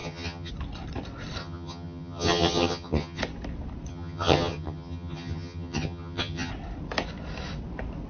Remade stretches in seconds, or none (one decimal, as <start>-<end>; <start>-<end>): 0.0-0.5; 1.4-3.2; 3.9-6.5